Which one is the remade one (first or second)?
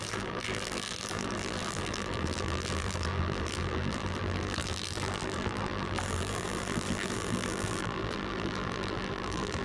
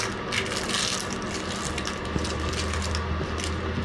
first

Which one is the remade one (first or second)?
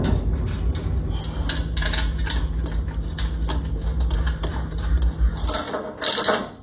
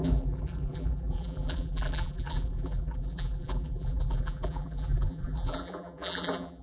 second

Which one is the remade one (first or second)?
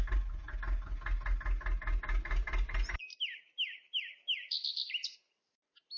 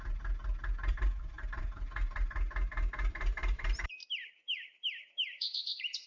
second